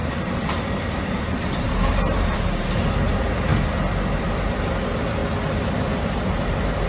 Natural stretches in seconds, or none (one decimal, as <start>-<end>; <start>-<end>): 3.5-4.2; 5.2-6.0